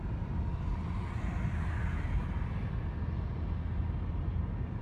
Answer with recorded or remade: recorded